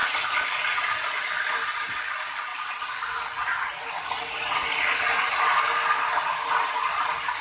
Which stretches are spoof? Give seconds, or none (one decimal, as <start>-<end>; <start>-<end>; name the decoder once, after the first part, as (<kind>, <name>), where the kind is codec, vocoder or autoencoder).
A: none